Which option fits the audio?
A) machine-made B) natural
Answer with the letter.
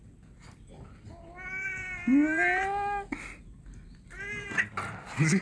B